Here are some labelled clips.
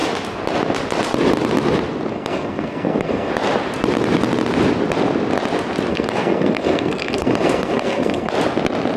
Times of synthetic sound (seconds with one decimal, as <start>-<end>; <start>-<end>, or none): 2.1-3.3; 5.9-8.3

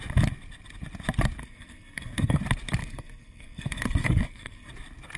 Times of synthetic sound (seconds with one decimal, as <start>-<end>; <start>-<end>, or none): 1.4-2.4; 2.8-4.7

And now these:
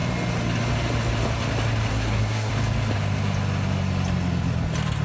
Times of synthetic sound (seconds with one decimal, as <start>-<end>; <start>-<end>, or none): 1.9-2.5

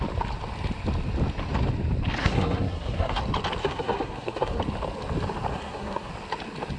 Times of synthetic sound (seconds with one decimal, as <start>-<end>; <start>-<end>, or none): 2.2-3.2; 3.6-4.6; 5.5-6.1

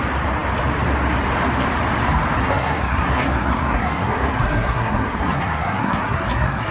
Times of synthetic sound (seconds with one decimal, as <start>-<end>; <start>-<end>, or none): 2.4-6.7

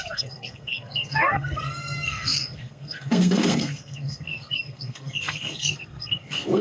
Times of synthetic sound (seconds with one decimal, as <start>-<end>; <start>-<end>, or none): 0.0-6.6